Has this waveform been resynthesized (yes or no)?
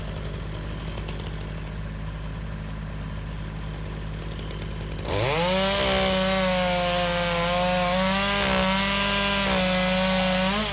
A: no